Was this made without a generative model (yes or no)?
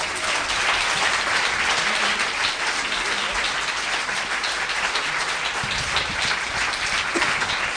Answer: yes